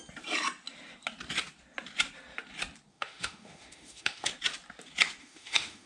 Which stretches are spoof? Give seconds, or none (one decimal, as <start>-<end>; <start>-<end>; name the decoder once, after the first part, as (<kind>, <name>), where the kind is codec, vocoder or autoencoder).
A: 2.9-4.3 (autoencoder, DAC-VAE); 5.2-5.9